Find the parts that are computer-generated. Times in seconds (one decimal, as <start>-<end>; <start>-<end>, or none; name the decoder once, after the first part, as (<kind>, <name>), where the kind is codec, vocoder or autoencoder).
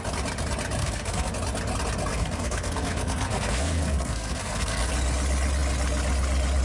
0.8-1.3 (codec, SNAC); 2.1-4.9